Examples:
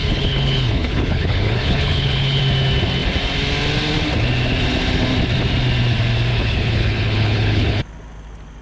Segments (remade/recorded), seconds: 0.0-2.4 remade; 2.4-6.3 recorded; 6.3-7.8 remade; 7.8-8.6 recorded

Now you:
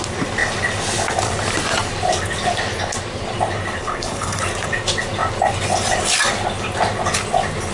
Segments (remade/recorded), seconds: 0.0-3.8 recorded; 3.8-4.4 remade; 4.4-7.7 recorded